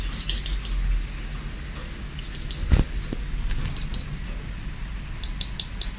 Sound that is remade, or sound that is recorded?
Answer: recorded